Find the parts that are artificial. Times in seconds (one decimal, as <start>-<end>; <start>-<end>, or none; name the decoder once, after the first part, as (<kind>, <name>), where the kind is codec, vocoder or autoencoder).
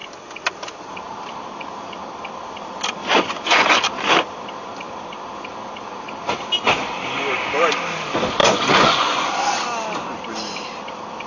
3.0-3.8 (vocoder, Vocos); 8.4-9.3